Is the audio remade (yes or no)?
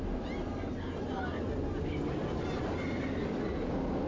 no